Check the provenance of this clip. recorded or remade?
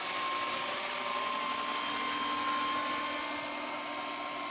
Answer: recorded